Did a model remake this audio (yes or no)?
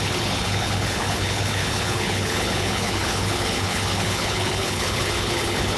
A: yes